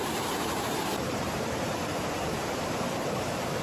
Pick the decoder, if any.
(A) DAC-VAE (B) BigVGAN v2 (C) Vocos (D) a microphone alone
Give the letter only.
B